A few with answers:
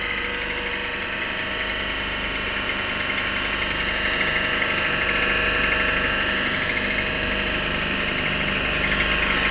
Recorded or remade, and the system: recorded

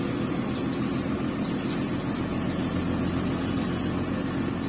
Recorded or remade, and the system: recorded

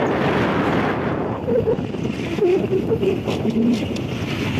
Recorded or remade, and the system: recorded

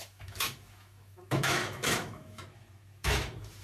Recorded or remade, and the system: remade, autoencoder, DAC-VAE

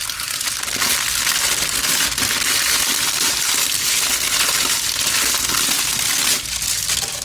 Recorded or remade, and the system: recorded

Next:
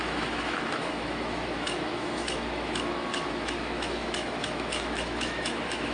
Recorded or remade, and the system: remade, autoencoder, DAC-VAE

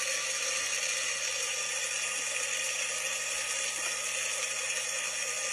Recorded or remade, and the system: recorded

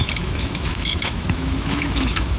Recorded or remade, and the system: remade, autoencoder, DAC-VAE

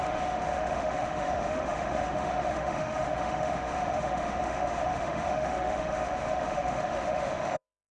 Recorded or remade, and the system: remade, autoencoder, DAC-VAE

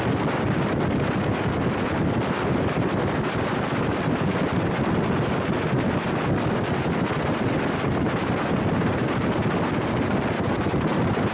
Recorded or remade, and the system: recorded